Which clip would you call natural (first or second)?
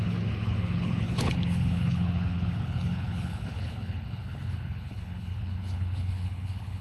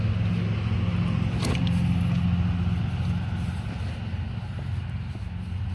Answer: second